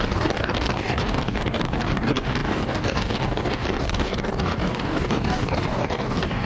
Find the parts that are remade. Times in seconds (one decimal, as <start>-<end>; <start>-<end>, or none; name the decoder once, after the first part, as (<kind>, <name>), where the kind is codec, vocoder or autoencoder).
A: 0.0-6.4 (codec, DAC)